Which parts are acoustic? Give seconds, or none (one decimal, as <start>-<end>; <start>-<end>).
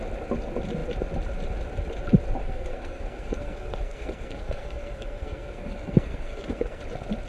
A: 0.0-2.4; 6.8-7.3